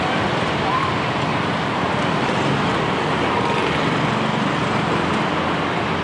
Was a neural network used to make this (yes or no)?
no